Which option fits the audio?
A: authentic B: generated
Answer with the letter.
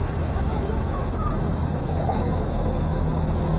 B